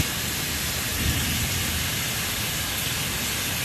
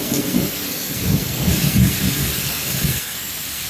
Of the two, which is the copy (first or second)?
second